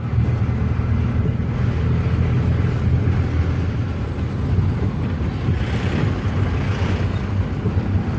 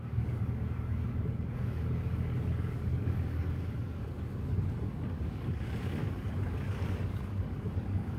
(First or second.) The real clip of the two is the first